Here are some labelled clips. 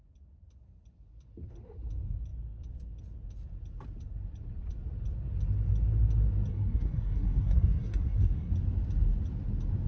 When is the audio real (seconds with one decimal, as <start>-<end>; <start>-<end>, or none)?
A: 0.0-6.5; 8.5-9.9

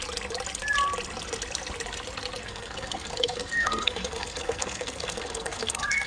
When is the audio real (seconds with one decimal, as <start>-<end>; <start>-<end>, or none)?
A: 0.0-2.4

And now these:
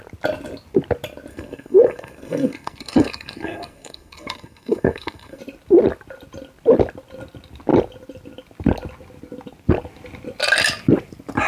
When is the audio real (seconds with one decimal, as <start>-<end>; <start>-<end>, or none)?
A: 0.0-1.3; 5.4-11.5